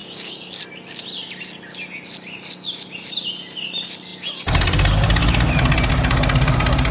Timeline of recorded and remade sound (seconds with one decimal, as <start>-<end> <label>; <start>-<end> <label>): 0.0-0.6 remade; 0.6-6.9 recorded